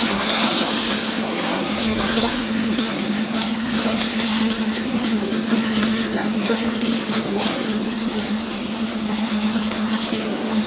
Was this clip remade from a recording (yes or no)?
yes